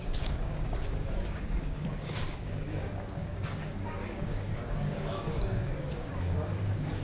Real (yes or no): no